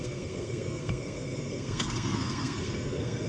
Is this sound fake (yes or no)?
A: yes